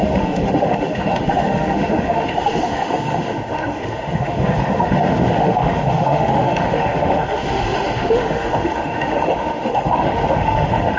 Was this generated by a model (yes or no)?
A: yes